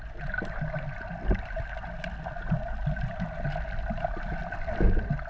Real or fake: real